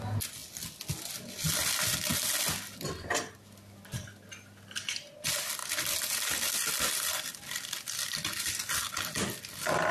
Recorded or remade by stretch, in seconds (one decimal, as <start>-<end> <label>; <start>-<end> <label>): 0.0-9.9 recorded